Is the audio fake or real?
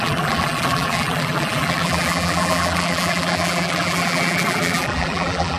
fake